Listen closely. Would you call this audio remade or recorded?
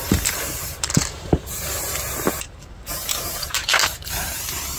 remade